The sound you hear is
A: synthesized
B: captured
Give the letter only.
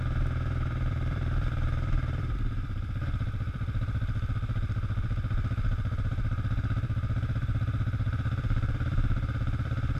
A